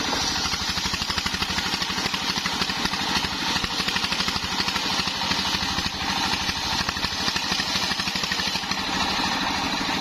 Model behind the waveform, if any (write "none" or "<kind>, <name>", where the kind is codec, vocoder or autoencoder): none